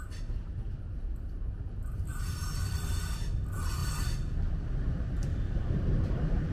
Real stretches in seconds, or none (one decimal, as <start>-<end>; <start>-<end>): 0.0-2.1; 2.8-3.8

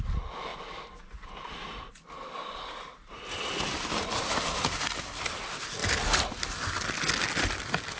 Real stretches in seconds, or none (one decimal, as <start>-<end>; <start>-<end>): 0.0-0.5; 5.2-8.0

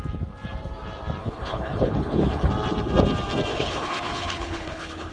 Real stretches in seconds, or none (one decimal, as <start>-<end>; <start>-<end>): 0.0-1.2; 2.5-3.5

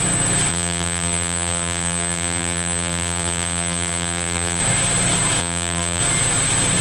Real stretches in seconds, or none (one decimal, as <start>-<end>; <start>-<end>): 0.0-0.5; 4.6-5.4; 6.0-6.8

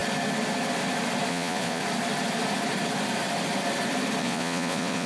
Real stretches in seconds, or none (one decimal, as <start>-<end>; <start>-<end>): 0.0-1.3; 1.8-4.2